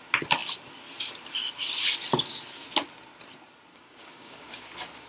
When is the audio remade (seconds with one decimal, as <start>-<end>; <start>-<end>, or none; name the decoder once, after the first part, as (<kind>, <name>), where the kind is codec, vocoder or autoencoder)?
3.7-4.6 (codec, DAC)

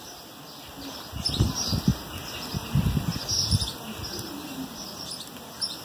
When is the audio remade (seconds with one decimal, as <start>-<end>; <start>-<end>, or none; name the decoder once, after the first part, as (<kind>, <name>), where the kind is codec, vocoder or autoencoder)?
none

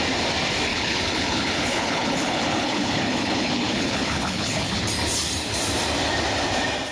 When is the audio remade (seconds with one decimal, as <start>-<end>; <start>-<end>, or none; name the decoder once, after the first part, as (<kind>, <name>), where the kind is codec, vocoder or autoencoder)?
0.7-4.8 (codec, HILCodec)